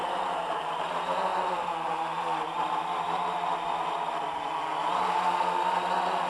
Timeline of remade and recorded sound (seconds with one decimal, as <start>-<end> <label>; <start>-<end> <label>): 0.0-0.8 remade; 0.8-1.3 recorded; 1.3-2.2 remade; 2.2-6.3 recorded